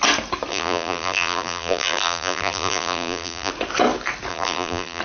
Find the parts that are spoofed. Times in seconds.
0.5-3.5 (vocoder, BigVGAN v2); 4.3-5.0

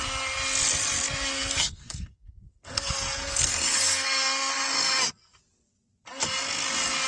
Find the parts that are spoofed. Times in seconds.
1.3-4.5 (codec, SNAC)

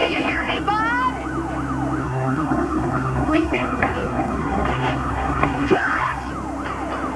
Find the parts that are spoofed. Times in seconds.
0.0-0.6 (codec, SNAC); 2.0-6.3

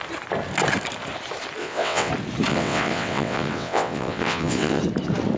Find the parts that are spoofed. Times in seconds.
1.6-2.1 (vocoder, WaveNeXt); 2.5-4.8

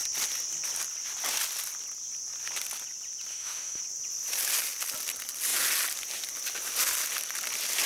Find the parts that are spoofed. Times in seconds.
3.3-3.8 (autoencoder, DAC-VAE)

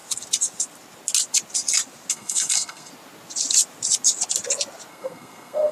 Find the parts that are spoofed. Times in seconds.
2.1-2.9 (codec, SNAC); 4.9-5.7